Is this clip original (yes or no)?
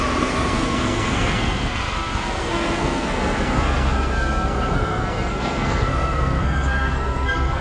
no